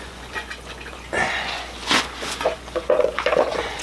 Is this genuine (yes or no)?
no